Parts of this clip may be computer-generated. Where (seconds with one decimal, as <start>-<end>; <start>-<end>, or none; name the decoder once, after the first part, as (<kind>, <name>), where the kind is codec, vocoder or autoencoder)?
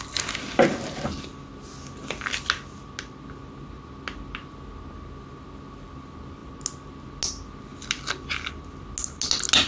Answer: none